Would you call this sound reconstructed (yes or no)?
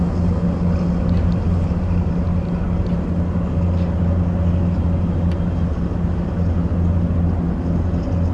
no